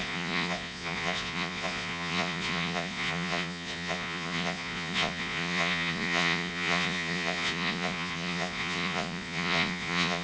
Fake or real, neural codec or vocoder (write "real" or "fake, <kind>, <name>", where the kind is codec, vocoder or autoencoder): fake, vocoder, Vocos